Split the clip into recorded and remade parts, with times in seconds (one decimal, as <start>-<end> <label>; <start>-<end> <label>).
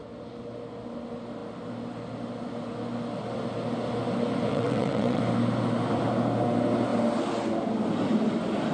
0.0-4.5 recorded; 4.5-5.2 remade; 5.2-8.7 recorded